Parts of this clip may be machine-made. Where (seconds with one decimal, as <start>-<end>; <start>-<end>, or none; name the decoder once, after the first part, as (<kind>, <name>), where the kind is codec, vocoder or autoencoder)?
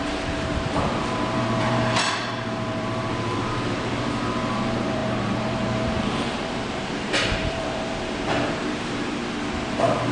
0.0-9.2 (vocoder, BigVGAN v2); 9.7-10.1